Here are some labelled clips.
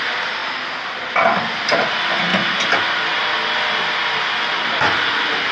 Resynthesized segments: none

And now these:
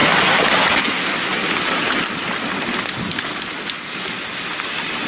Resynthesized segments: none

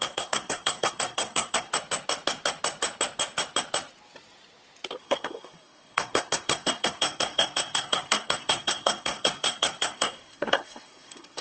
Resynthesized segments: 0.0-1.7 (codec, SNAC); 5.0-11.4